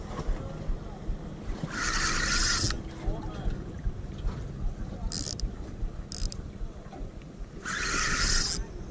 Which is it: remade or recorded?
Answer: recorded